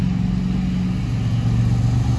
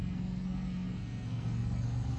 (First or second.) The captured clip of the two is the first